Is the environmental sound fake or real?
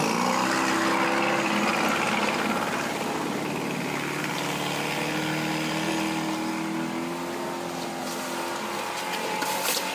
real